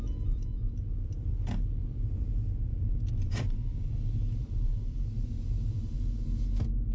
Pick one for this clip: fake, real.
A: real